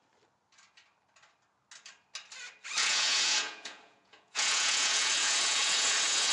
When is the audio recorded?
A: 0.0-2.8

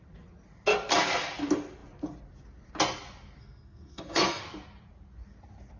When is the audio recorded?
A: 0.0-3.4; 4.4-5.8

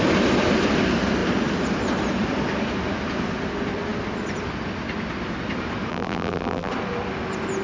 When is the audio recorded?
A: 0.0-5.9; 6.7-7.6

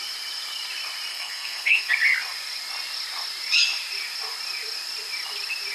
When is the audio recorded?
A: 0.0-1.1; 1.9-5.7